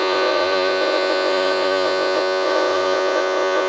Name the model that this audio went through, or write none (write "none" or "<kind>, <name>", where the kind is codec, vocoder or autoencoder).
vocoder, Vocos